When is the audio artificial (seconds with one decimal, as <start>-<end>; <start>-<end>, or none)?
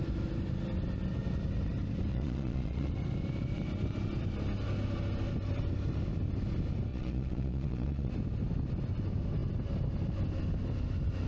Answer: 2.1-2.9; 6.9-8.1